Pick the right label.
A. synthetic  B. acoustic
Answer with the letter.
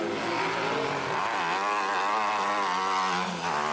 B